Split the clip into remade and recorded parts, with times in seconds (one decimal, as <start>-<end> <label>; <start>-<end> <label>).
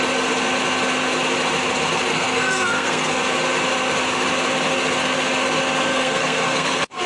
0.0-2.1 recorded; 2.1-3.2 remade; 3.2-5.9 recorded; 5.9-7.1 remade